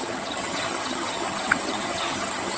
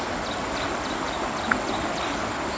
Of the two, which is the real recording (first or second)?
second